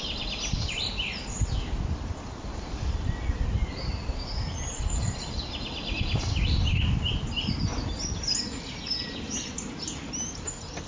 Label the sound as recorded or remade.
recorded